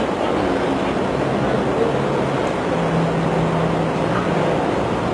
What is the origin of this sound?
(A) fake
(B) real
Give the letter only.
B